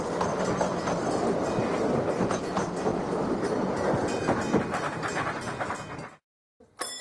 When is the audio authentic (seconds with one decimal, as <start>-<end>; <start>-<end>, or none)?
0.0-7.0